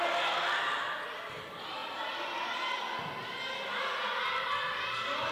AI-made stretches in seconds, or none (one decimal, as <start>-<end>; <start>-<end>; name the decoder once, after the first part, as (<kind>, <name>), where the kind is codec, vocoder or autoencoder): none

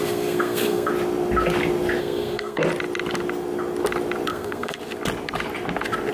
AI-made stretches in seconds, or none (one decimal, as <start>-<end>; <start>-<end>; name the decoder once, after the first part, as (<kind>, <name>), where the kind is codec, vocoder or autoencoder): 0.0-0.9 (codec, SNAC); 2.0-2.6; 4.3-4.8

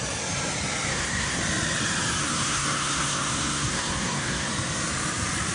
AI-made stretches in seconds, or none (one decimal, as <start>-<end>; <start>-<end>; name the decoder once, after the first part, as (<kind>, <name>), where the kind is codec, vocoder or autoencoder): 0.9-1.4 (codec, SNAC); 2.2-4.5

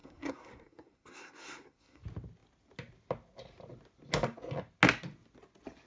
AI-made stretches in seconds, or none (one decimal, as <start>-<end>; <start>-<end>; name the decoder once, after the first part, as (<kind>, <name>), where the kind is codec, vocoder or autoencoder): 0.0-2.0 (codec, SNAC)

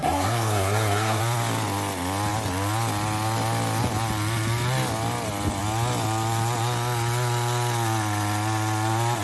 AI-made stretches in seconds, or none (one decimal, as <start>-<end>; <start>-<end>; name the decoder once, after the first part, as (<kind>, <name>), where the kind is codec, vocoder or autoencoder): 0.0-1.2 (codec, SNAC)

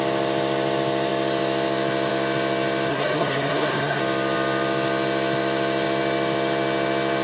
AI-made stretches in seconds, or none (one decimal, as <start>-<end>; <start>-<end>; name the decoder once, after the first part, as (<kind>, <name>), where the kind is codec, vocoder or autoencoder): 2.9-4.0 (codec, SNAC)